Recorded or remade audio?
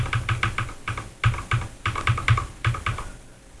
recorded